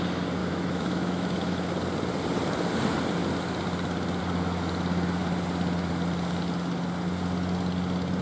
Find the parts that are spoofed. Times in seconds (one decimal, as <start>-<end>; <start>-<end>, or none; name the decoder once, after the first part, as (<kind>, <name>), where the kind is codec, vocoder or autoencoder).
0.4-1.7 (autoencoder, DAC-VAE)